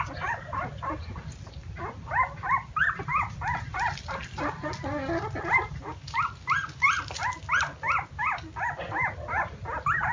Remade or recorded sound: recorded